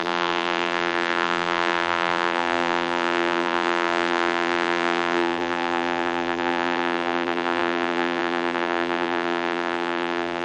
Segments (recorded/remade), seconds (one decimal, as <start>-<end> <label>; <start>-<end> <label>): 0.0-10.4 remade